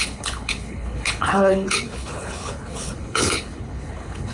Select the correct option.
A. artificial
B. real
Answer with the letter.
A